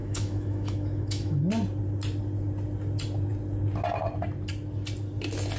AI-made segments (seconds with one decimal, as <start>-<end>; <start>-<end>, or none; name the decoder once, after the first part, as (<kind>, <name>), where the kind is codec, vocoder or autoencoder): 0.0-1.4 (autoencoder, DAC-VAE)